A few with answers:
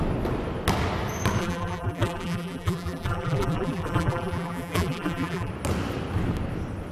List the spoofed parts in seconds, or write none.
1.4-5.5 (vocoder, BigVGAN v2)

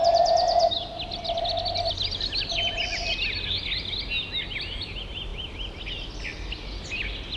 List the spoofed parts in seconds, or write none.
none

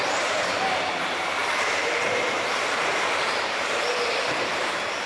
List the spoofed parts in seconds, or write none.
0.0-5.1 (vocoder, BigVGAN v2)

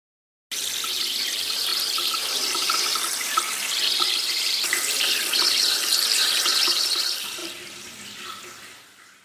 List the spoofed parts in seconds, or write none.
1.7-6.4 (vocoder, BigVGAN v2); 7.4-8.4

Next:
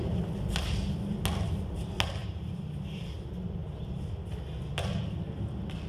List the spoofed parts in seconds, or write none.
2.2-2.7 (vocoder, BigVGAN v2)